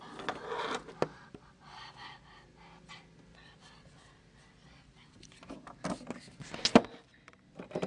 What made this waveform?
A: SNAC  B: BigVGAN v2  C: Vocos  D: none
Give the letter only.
D